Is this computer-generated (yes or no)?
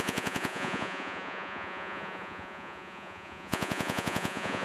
yes